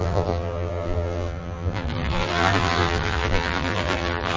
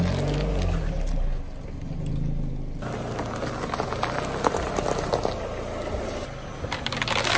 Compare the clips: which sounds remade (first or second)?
first